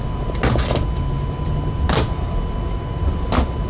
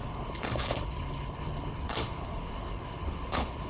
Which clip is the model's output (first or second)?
second